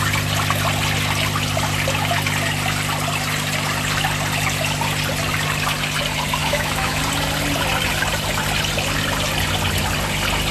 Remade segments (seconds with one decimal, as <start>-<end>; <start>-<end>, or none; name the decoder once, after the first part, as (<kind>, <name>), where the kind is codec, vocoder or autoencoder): 6.4-7.0 (autoencoder, DAC-VAE)